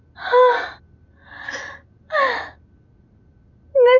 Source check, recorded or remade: recorded